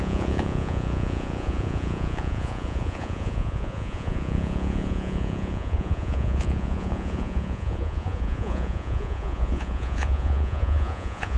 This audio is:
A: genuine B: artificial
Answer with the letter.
B